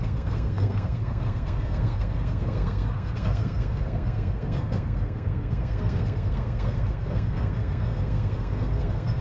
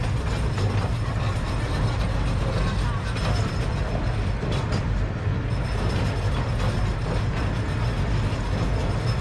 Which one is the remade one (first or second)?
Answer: first